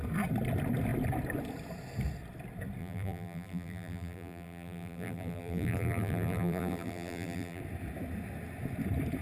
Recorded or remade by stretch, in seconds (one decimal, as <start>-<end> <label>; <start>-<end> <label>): 0.0-2.8 recorded; 2.8-7.6 remade; 7.6-9.2 recorded